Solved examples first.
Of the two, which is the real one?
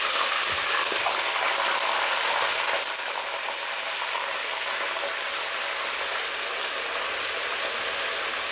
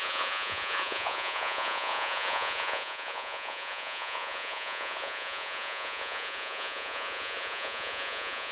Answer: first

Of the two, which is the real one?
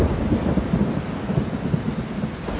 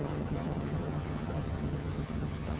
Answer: first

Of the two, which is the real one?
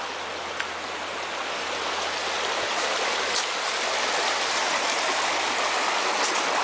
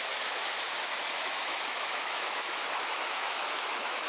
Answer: first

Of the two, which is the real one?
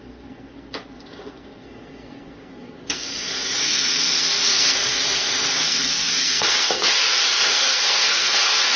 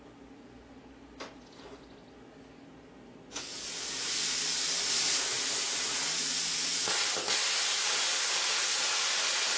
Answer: second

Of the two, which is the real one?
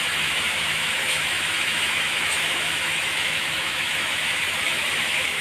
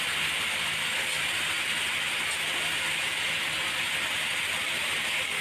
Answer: second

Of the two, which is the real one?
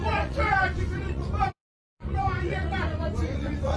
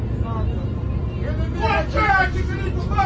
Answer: second